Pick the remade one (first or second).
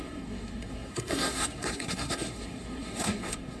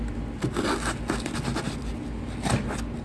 first